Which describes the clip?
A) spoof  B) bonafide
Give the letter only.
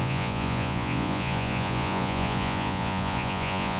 A